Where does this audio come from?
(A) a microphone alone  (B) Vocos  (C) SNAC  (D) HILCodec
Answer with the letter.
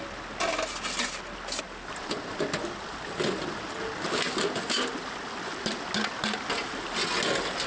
A